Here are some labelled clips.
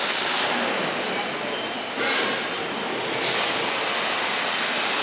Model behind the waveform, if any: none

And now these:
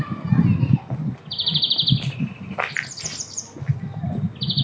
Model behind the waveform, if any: none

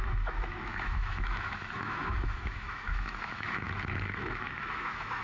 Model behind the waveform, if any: autoencoder, DAC-VAE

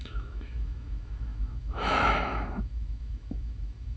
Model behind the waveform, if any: autoencoder, DAC-VAE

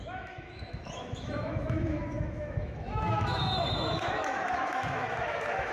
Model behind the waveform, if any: autoencoder, DAC-VAE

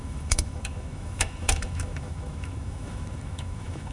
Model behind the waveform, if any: autoencoder, DAC-VAE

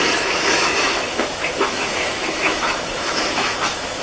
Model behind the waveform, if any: autoencoder, DAC-VAE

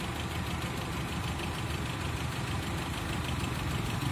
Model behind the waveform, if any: none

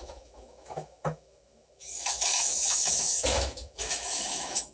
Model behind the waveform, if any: autoencoder, DAC-VAE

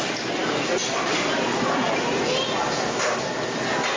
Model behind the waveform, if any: none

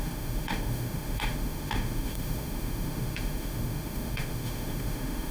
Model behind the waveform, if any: autoencoder, DAC-VAE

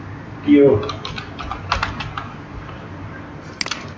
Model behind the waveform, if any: none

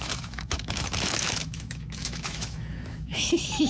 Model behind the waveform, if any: autoencoder, DAC-VAE